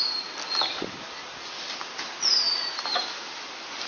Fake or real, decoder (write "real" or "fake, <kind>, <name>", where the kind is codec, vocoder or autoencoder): real